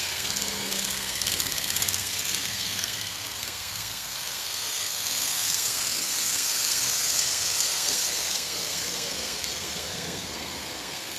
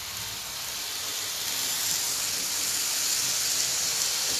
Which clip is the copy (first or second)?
first